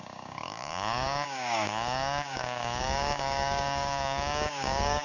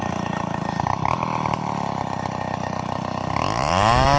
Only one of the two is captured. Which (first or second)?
second